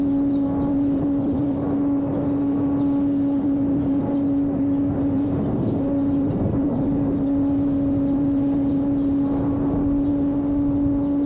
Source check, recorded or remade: recorded